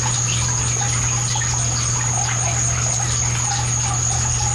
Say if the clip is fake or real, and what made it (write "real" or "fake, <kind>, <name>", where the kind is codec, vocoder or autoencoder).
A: real